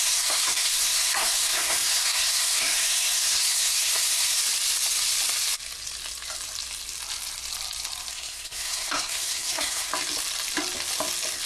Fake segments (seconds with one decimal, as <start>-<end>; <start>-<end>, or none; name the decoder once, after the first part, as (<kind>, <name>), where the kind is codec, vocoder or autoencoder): 0.0-4.4 (codec, SNAC); 8.1-9.9